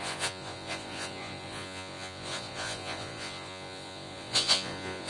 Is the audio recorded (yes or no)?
no